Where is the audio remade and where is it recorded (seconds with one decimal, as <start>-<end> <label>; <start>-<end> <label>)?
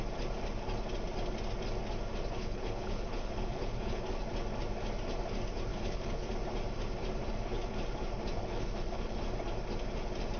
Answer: 0.0-2.4 recorded; 2.4-4.0 remade; 4.0-5.7 recorded; 5.7-6.3 remade; 6.3-8.4 recorded; 8.4-9.2 remade; 9.2-10.4 recorded